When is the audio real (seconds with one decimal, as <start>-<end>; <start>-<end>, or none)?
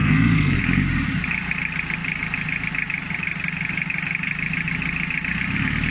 0.6-5.9